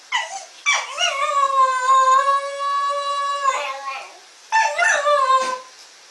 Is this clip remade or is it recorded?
recorded